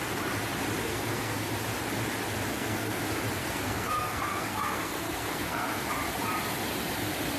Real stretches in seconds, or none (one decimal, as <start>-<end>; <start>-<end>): 0.0-0.9; 1.5-2.5; 3.0-3.4; 5.9-7.4

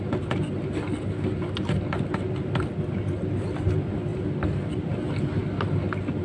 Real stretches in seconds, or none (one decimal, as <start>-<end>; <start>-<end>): 0.0-6.2

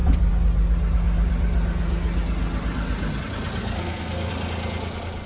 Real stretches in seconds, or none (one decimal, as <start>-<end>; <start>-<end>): 0.0-3.6; 4.3-5.3

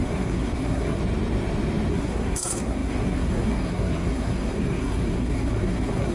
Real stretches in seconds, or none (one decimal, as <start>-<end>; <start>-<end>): 1.0-1.9

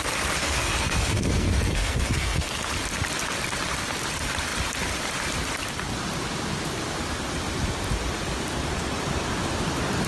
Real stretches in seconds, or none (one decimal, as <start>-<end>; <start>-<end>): 0.0-0.4; 2.7-10.1

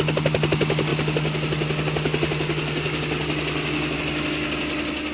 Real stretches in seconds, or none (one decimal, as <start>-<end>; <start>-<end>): 0.0-5.1